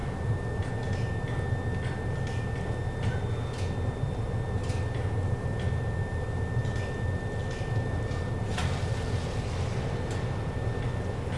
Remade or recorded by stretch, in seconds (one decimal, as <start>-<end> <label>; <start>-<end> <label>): 0.0-11.4 recorded

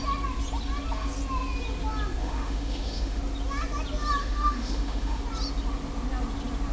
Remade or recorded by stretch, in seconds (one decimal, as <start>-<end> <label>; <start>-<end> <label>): 0.0-2.2 recorded; 2.2-3.2 remade; 3.2-4.2 recorded; 4.2-5.2 remade; 5.2-6.7 recorded

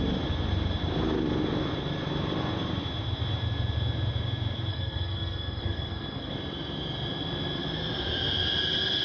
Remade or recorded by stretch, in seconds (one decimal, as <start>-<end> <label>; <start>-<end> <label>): 0.0-4.7 recorded; 4.7-6.3 remade; 6.3-9.0 recorded

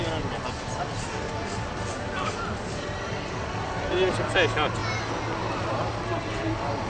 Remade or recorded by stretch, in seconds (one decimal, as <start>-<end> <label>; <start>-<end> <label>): 0.0-6.9 recorded

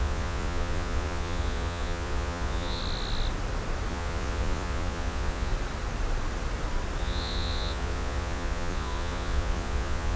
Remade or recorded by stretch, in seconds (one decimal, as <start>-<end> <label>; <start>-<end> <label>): 0.0-2.8 remade; 2.8-3.9 recorded; 3.9-5.5 remade; 5.5-7.0 recorded; 7.0-10.2 remade